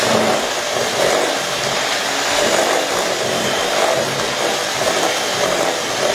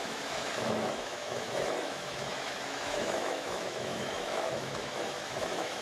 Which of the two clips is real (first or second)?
first